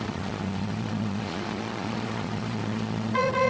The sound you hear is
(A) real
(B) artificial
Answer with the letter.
B